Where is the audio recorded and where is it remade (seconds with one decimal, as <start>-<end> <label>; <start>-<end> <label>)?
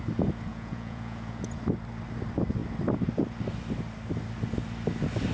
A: 0.0-0.5 recorded; 0.5-1.6 remade; 1.6-5.3 recorded